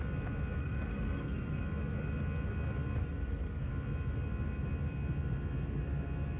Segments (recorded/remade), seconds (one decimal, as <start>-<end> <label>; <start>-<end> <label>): 0.0-0.6 recorded; 0.6-1.6 remade; 1.6-3.0 recorded; 3.0-3.7 remade; 3.7-6.4 recorded